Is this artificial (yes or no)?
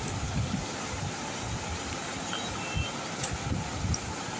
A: no